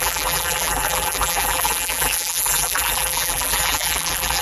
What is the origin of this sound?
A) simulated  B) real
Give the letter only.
A